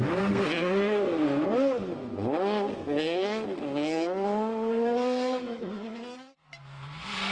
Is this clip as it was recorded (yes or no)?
no